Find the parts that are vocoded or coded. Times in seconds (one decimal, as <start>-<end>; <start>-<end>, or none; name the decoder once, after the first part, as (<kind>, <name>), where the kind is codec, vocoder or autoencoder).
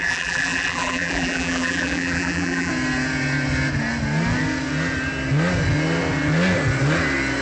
0.0-2.7 (vocoder, BigVGAN v2)